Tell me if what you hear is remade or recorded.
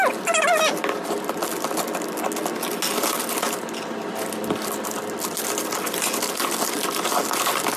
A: recorded